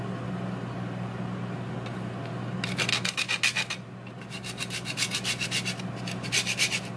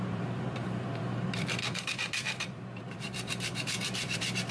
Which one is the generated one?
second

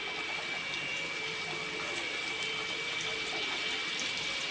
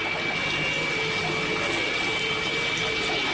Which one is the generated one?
first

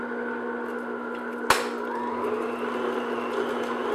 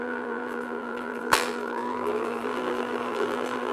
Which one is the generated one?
second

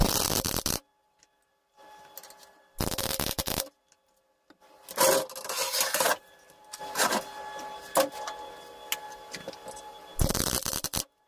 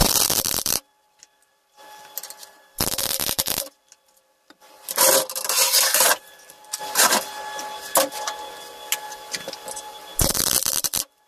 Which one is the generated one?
second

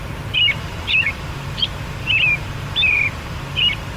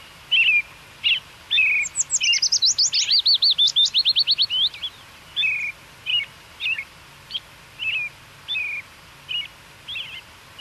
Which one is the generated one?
first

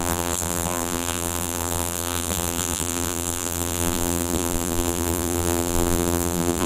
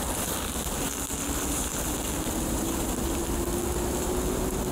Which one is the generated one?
first